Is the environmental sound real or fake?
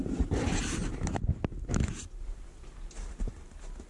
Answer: real